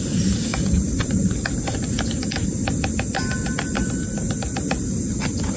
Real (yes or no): yes